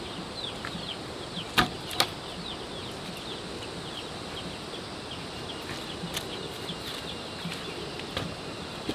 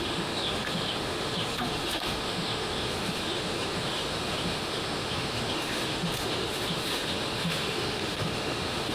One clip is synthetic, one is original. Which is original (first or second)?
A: first